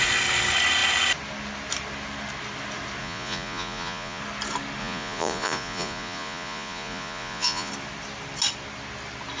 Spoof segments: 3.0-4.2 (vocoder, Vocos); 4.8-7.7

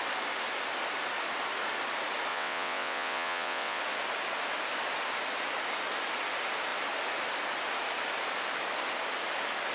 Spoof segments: 2.3-3.8 (vocoder, WaveNeXt)

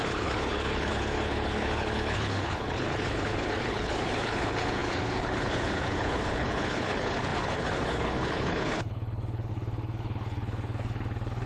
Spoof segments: 0.0-11.5 (codec, HILCodec)

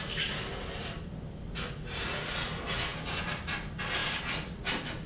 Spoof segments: none

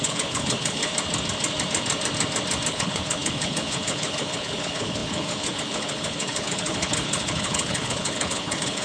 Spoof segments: 0.0-0.8 (codec, HILCodec); 2.7-8.8

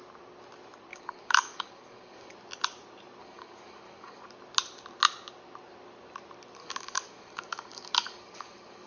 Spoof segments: 0.9-2.3 (codec, DAC); 3.2-4.2; 6.6-8.9

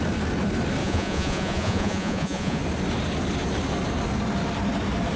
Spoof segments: 0.8-2.6 (vocoder, Vocos)

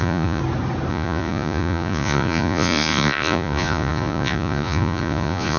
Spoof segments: 0.0-0.4 (vocoder, Vocos); 0.9-5.6